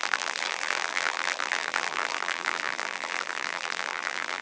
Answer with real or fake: fake